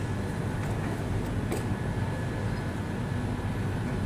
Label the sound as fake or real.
real